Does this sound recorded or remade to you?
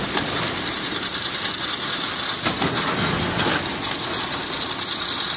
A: recorded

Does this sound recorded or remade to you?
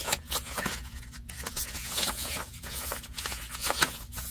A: remade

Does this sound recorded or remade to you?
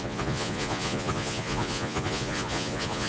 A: remade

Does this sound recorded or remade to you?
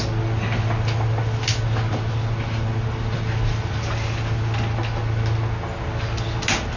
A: recorded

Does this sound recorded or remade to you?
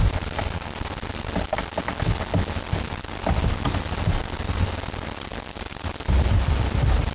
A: recorded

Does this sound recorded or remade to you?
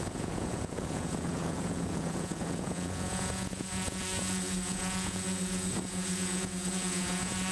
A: remade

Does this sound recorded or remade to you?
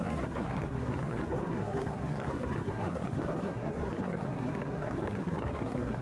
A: remade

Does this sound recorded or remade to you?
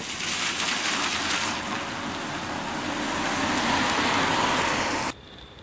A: recorded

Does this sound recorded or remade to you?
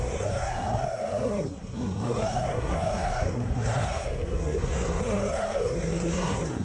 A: remade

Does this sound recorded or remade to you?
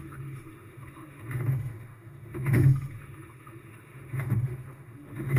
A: remade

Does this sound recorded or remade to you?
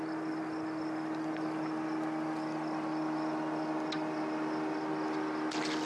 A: recorded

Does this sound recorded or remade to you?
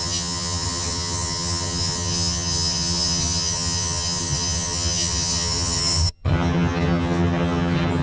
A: remade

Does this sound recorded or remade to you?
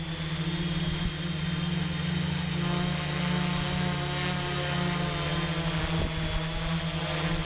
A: recorded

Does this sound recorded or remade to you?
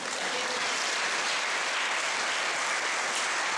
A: recorded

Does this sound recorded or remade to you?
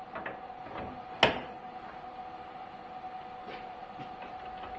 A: recorded